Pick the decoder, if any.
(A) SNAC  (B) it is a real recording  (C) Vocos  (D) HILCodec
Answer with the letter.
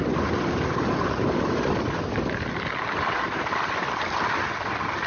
B